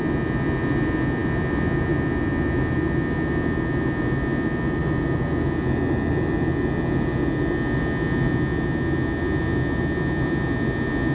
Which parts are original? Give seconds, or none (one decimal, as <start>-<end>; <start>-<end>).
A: 0.0-11.1